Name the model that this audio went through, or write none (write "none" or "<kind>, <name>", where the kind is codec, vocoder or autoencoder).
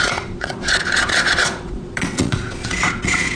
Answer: vocoder, Vocos